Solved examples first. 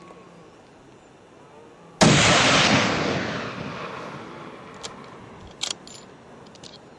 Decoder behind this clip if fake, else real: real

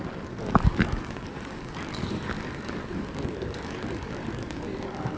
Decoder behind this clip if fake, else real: fake, codec, DAC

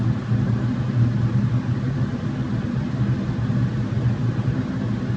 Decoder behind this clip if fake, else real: real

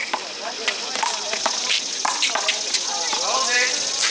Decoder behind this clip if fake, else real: real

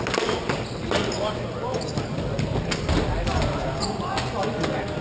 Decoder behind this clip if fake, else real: real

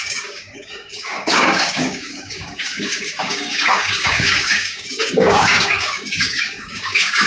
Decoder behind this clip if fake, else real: fake, codec, DAC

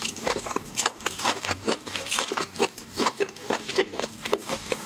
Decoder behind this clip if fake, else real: fake, codec, DAC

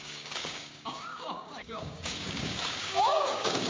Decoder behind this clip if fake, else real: fake, codec, DAC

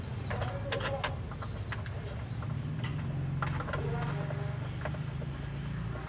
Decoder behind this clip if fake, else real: real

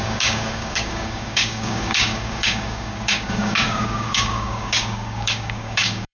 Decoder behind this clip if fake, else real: fake, codec, DAC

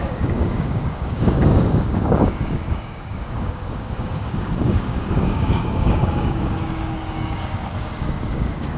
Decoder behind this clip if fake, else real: fake, codec, DAC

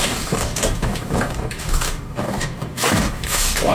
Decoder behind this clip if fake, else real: fake, codec, DAC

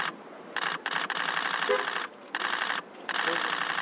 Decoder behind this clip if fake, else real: real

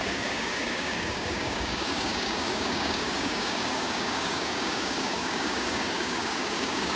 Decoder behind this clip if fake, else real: fake, codec, DAC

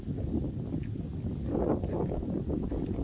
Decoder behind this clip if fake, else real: real